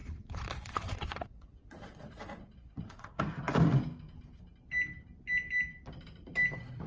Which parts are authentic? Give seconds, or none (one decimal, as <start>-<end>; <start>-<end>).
3.2-6.9